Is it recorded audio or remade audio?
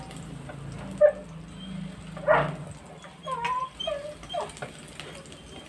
recorded